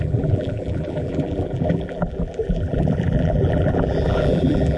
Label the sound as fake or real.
fake